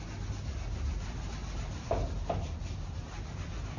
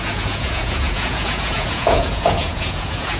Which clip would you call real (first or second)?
first